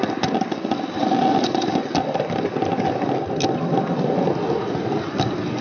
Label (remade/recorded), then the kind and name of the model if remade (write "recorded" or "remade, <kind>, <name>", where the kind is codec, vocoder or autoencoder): recorded